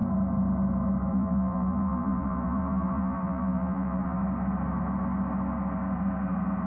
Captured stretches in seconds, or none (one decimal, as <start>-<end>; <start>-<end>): 0.0-1.1; 4.2-6.7